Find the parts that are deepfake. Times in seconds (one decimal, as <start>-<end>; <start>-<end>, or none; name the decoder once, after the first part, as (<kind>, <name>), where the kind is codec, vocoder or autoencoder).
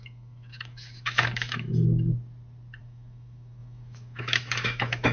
0.0-1.7 (autoencoder, DAC-VAE); 2.8-5.1